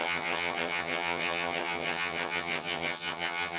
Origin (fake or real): fake